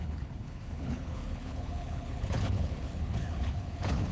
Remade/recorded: remade